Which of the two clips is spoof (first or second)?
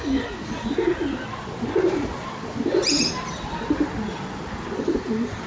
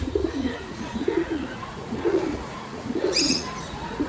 second